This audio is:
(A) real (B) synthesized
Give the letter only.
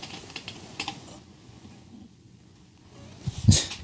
B